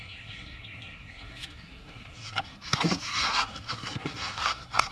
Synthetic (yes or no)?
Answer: yes